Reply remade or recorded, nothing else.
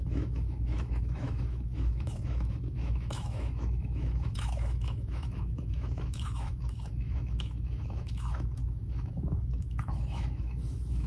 remade